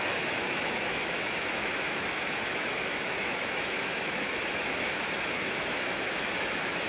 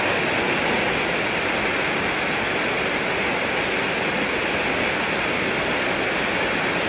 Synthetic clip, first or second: first